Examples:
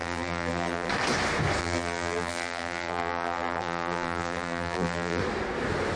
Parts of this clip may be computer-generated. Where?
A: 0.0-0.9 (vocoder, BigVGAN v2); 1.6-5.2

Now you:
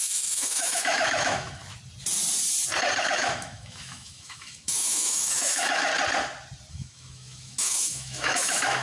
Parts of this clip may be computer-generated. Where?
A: 0.0-1.6 (autoencoder, DAC-VAE); 3.0-5.9; 6.7-8.8

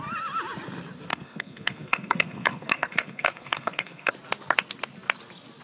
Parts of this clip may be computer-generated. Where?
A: 1.1-4.1 (codec, SNAC)